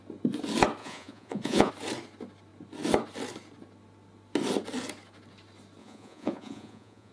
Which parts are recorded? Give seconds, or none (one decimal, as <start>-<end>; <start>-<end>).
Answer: 0.0-0.8; 1.7-5.8